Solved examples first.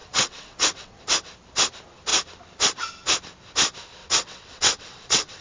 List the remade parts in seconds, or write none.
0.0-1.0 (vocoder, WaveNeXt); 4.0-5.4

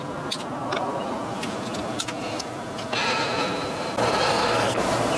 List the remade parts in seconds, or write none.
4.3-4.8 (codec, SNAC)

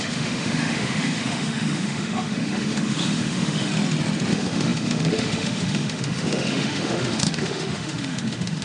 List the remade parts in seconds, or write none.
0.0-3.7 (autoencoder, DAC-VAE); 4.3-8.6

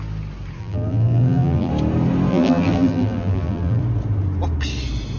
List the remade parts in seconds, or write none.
0.6-1.7 (vocoder, BigVGAN v2); 2.3-3.8

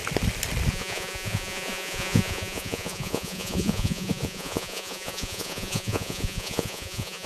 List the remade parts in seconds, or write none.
0.7-7.3 (vocoder, Vocos)

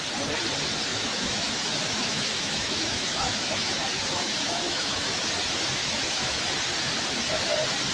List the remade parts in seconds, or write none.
0.9-5.2 (autoencoder, DAC-VAE); 5.8-6.4

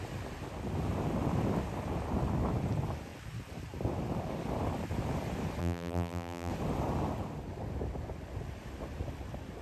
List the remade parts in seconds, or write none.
5.6-6.5 (vocoder, BigVGAN v2)